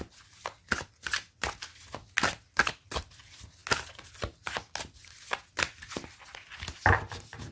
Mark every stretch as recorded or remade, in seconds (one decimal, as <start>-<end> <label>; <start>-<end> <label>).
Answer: 0.0-7.5 recorded